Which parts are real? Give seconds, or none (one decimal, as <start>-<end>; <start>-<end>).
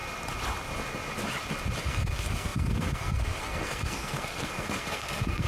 0.0-1.8